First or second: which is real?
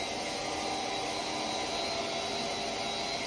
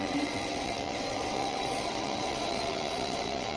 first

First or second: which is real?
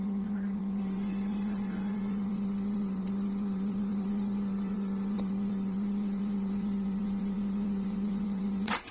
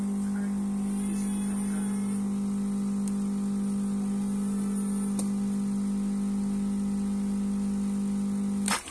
second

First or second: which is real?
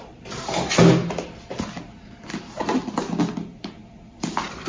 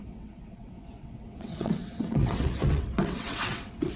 first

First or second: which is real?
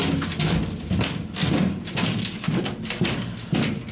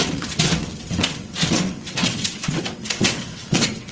first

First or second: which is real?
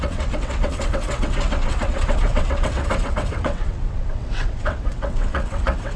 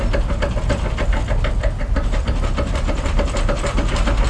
second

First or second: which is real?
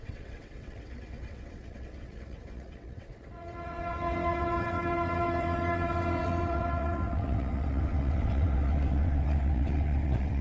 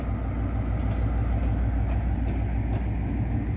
second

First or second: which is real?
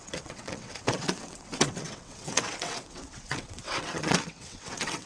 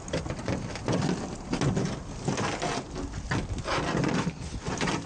second